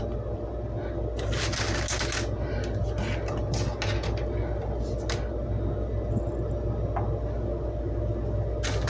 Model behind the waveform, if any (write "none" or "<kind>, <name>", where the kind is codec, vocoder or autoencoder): none